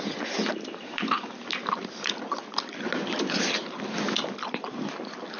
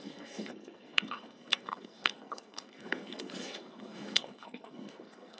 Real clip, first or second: first